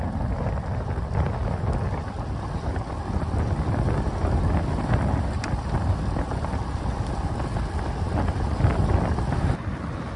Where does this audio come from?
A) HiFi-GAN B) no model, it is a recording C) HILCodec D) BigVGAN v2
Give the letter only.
B